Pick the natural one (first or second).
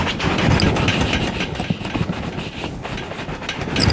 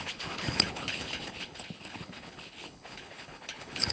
first